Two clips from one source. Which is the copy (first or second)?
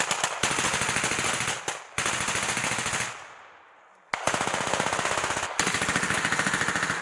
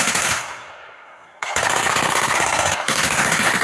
second